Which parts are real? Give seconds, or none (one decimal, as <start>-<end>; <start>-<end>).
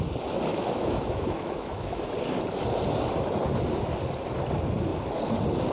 0.0-0.5; 2.1-5.7